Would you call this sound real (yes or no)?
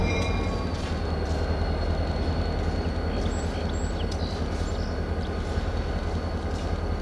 yes